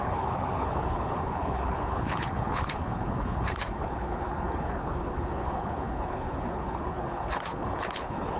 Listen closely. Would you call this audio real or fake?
fake